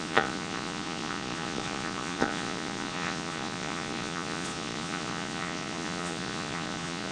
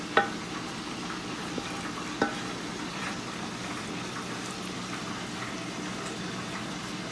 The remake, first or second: first